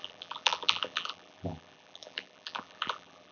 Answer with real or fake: fake